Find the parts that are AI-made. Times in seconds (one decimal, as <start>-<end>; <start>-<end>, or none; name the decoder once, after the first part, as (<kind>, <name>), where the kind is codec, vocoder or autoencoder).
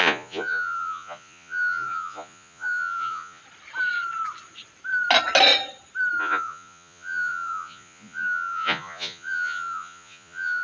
0.0-3.4 (vocoder, Vocos); 6.2-10.6